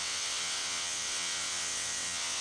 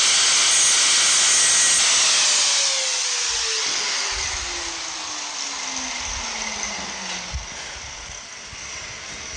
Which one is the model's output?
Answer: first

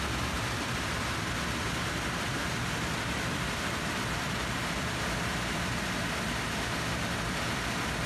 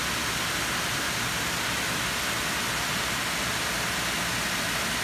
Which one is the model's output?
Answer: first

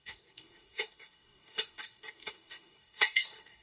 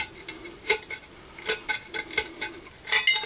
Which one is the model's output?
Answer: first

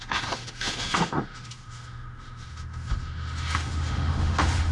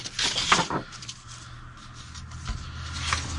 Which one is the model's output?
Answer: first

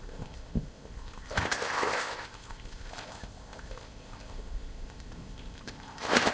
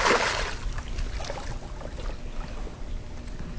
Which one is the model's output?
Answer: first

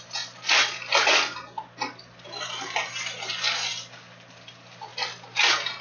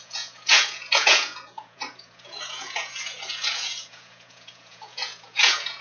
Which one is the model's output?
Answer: second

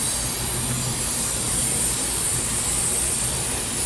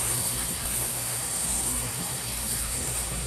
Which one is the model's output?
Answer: second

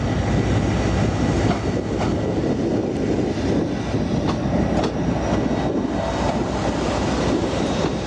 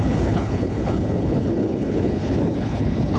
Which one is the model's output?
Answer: second